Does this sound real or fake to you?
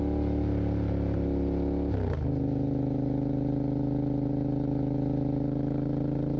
real